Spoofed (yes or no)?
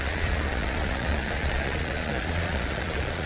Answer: yes